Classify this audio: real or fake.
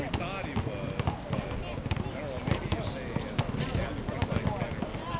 real